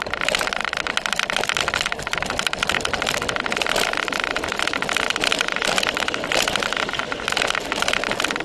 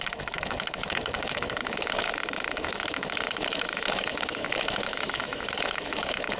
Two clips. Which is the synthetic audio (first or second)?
second